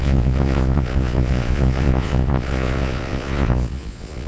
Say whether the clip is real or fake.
fake